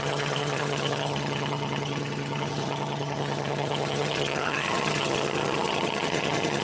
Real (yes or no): no